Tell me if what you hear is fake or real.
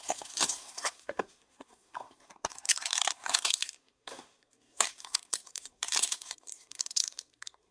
fake